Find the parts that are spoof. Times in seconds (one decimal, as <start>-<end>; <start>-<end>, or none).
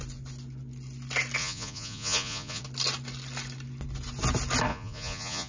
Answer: 1.4-2.6; 4.7-5.5